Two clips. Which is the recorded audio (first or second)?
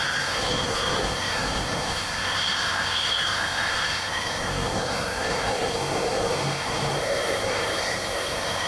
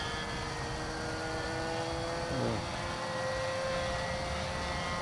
second